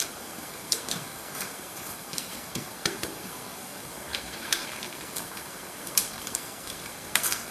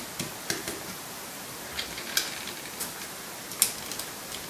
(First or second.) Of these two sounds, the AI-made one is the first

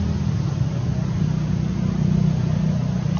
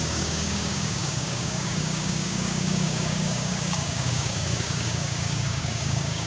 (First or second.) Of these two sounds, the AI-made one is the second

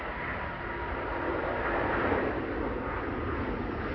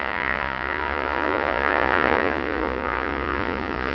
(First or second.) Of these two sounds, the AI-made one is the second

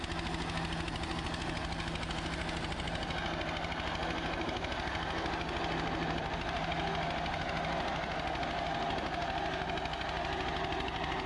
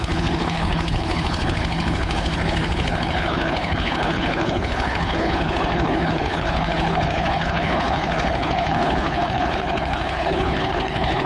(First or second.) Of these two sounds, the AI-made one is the second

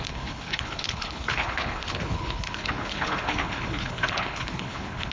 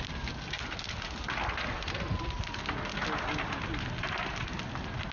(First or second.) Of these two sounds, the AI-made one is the first